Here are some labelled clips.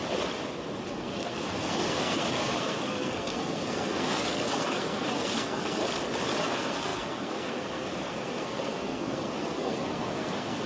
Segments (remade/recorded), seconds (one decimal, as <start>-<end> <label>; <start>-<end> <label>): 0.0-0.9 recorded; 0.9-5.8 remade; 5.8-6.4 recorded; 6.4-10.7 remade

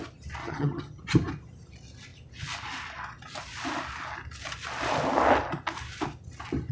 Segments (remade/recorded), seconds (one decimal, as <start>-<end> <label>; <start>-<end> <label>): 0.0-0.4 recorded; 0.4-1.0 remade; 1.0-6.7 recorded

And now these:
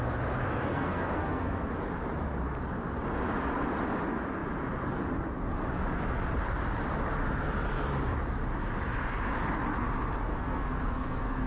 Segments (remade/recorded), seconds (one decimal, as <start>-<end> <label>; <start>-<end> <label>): 0.0-0.7 recorded; 0.7-1.7 remade; 1.7-10.3 recorded; 10.3-11.5 remade